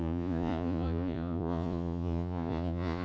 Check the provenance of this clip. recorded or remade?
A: remade